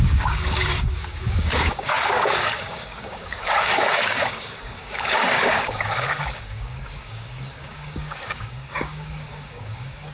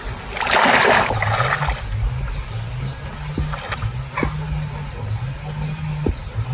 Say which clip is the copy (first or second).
first